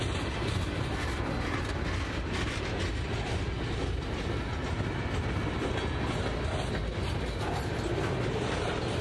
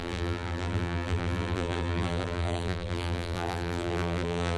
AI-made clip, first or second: second